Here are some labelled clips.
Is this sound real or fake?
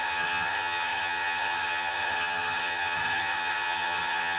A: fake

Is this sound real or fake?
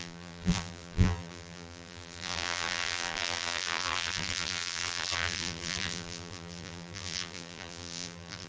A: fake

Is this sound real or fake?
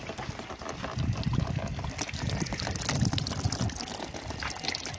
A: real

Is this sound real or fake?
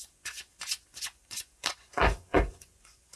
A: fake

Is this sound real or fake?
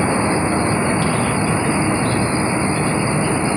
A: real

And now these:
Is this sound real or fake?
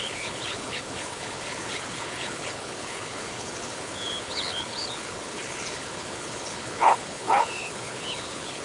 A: fake